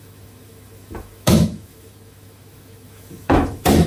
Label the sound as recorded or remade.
remade